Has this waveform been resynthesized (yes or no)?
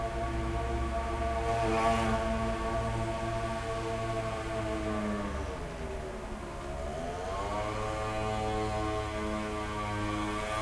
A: no